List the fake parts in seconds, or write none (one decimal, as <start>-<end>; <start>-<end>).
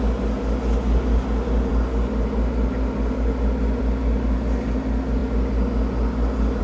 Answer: none